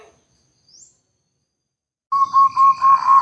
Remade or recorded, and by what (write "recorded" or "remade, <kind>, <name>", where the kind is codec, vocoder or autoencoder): recorded